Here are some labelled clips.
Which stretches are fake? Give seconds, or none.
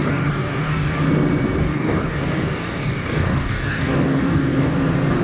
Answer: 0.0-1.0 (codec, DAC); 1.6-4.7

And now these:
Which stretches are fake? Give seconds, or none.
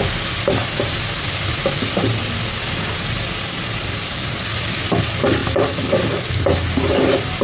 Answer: none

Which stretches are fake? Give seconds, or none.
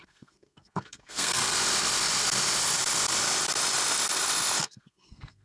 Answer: 0.0-1.4 (codec, SNAC); 4.6-5.4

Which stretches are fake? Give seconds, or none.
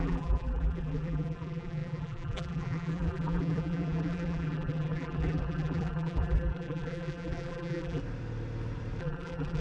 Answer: 0.0-8.0 (vocoder, BigVGAN v2); 9.0-9.6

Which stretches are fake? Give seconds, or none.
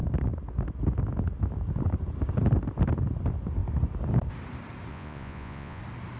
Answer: 4.9-5.8 (vocoder, Vocos)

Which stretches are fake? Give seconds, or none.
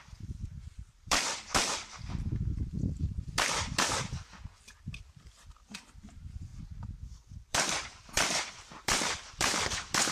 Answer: 0.0-6.5 (vocoder, BigVGAN v2); 7.3-10.1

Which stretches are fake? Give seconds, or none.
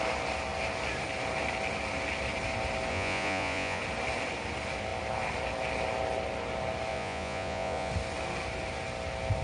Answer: 2.9-3.8 (vocoder, Vocos); 6.9-7.9